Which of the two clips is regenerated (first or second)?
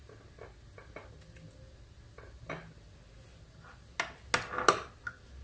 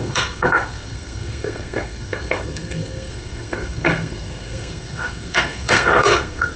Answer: second